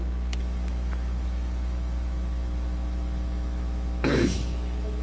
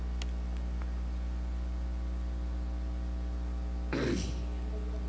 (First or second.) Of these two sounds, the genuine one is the second